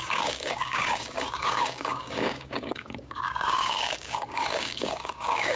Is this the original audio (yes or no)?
no